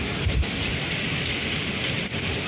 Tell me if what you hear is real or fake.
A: real